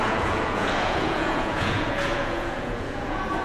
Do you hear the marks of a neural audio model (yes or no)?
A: yes